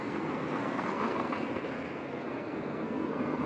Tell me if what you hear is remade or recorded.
remade